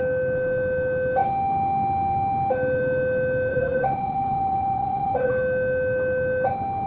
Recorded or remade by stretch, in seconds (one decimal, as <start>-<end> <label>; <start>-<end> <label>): 0.0-3.5 recorded; 3.5-5.3 remade; 5.3-6.9 recorded